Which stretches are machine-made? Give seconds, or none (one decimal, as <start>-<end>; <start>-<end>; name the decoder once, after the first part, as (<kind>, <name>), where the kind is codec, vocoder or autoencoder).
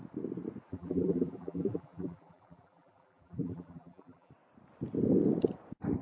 0.7-4.3 (vocoder, BigVGAN v2)